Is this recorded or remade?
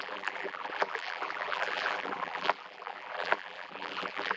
remade